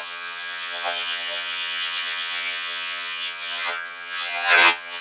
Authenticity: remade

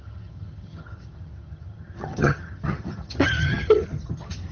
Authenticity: remade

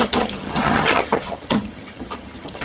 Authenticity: remade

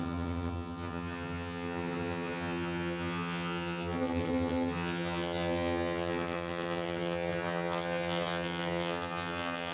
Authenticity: remade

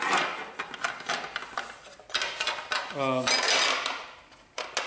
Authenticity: recorded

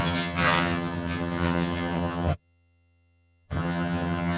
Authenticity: remade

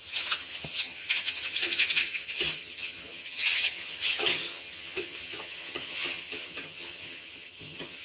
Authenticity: remade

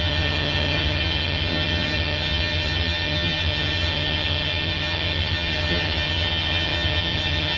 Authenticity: remade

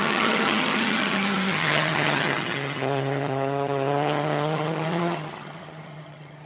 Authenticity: remade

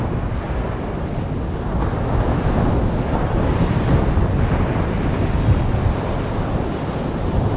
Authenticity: recorded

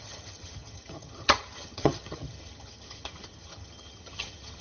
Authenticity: remade